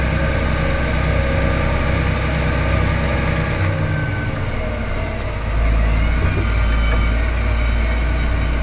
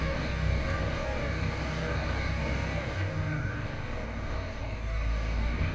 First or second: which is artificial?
second